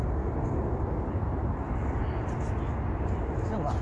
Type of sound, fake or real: real